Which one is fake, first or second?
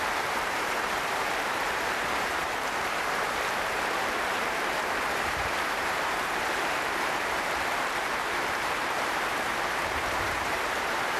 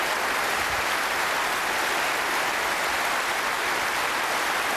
first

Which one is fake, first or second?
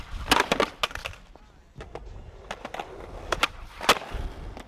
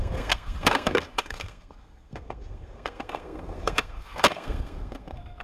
second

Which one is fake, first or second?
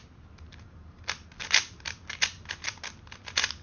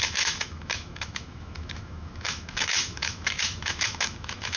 second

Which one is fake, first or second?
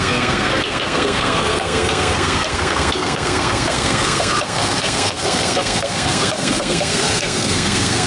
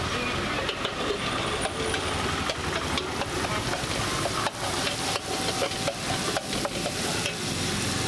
first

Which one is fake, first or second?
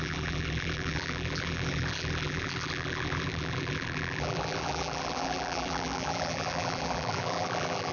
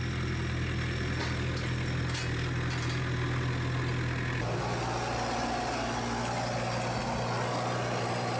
first